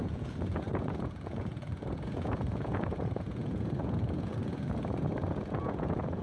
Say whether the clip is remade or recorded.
remade